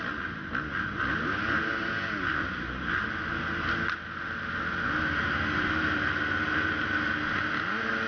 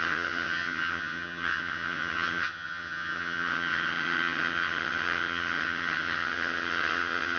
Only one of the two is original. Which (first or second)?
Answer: first